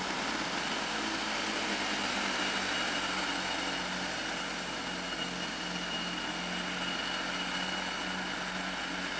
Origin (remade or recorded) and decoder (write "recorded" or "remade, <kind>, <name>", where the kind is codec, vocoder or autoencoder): recorded